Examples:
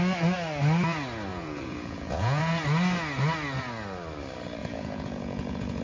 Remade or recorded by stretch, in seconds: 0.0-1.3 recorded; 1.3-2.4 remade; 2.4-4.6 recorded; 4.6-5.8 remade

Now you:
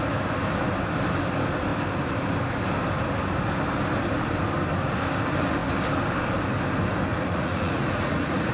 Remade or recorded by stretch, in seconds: 0.0-7.1 recorded; 7.1-8.5 remade

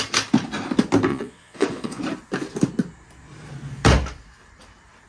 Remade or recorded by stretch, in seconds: 0.0-1.1 recorded; 1.1-2.0 remade; 2.0-5.1 recorded

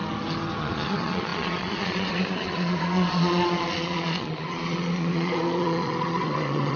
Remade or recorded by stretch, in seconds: 0.0-0.6 recorded; 0.6-6.8 remade

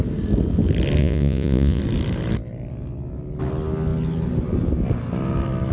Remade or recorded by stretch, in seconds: 0.0-1.0 recorded; 1.0-1.8 remade; 1.8-5.7 recorded

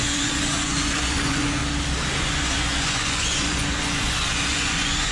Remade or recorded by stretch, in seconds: 0.0-1.6 remade; 1.6-2.2 recorded; 2.2-5.1 remade

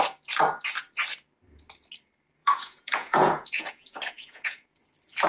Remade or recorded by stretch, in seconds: 0.0-2.4 recorded; 2.4-4.8 remade; 4.8-5.3 recorded